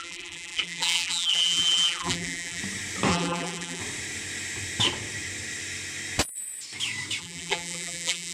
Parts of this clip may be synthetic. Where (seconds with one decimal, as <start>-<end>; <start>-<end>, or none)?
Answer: 0.0-2.6; 3.1-3.8; 7.2-8.3